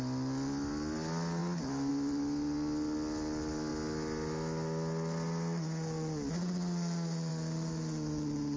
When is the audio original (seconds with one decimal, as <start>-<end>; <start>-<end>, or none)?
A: 0.0-8.6